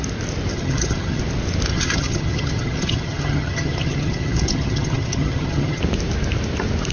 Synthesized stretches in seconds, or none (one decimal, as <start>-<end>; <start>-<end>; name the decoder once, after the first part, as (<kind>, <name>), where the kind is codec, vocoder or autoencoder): 0.5-1.2 (vocoder, HiFi-GAN); 1.7-5.8